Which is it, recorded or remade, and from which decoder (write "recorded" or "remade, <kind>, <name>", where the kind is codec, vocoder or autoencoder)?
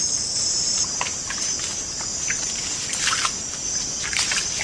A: remade, vocoder, BigVGAN v2